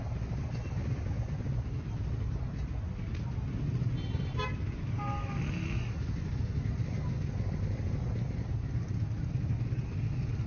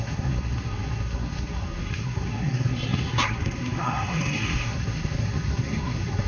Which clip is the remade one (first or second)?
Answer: second